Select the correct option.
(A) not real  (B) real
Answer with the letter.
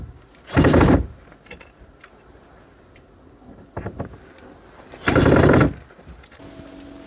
B